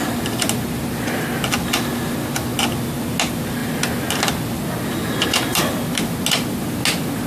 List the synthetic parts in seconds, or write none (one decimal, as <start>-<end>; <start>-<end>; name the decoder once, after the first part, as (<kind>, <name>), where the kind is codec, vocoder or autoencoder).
none